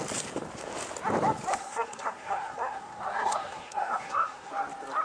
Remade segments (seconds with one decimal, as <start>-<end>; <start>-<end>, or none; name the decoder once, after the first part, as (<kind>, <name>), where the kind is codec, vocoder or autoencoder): 1.5-4.5 (codec, SNAC)